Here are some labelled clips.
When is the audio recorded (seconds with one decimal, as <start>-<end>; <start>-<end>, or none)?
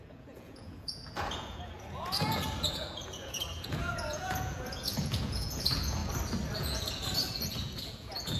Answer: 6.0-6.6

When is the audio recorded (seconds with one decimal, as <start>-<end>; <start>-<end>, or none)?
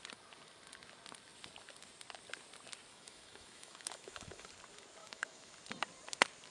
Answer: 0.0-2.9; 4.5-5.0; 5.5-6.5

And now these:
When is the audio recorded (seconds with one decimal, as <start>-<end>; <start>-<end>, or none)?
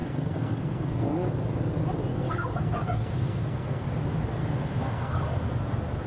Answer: 1.3-2.1; 3.9-4.4; 5.2-6.1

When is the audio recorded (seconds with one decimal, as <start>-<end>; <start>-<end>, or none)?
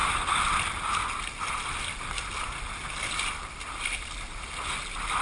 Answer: 0.0-5.2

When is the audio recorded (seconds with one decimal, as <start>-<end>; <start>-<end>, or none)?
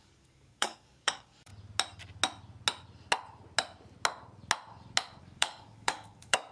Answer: 1.5-5.2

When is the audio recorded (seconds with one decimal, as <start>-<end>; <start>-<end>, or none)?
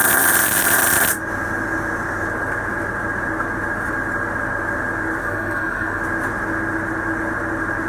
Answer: 0.0-5.2; 6.0-7.9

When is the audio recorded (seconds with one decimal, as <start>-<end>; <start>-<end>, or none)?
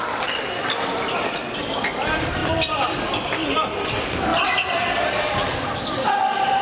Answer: 0.0-6.6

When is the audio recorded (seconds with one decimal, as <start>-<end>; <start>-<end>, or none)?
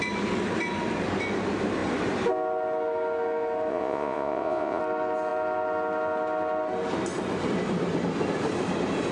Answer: 0.0-3.7; 4.8-9.1